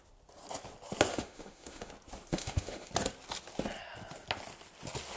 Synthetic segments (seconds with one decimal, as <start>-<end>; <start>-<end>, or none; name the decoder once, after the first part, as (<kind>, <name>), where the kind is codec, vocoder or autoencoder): 1.1-1.9 (autoencoder, DAC-VAE); 2.3-2.9